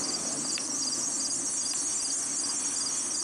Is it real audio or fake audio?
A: real